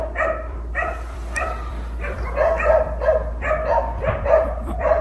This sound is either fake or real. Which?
fake